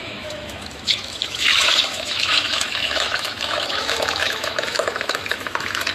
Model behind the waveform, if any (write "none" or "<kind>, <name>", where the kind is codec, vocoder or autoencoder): autoencoder, DAC-VAE